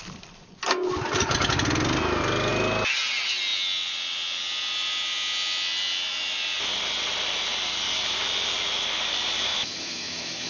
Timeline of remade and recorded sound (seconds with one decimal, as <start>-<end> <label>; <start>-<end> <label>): 0.0-9.5 recorded; 9.5-10.5 remade